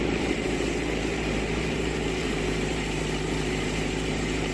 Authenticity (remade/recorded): remade